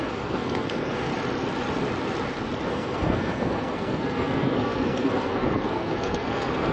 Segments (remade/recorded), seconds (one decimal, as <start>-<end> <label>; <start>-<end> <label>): 0.0-1.1 remade; 1.1-2.7 recorded; 2.7-6.7 remade